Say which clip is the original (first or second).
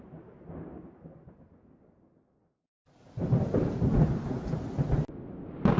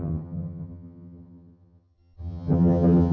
first